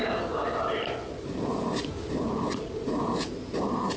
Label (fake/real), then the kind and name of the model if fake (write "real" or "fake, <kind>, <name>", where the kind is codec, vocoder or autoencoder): real